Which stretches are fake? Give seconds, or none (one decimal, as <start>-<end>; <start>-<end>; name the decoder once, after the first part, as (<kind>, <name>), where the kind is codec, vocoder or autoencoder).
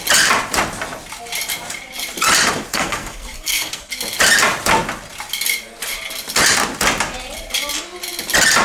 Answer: 2.7-3.9 (codec, SNAC)